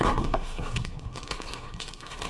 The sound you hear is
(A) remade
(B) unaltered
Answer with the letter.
A